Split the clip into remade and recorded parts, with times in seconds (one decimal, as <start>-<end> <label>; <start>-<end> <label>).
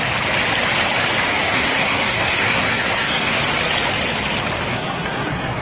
0.0-1.3 recorded; 1.3-3.4 remade; 3.4-4.7 recorded; 4.7-5.6 remade